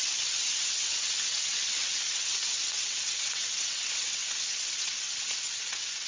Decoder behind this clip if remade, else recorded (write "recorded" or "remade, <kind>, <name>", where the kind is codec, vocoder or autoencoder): remade, vocoder, WaveNeXt